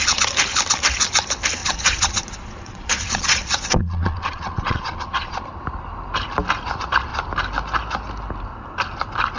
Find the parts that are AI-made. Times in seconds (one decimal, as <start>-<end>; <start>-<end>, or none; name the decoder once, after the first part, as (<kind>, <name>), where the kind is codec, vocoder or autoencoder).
1.6-5.4 (vocoder, Vocos)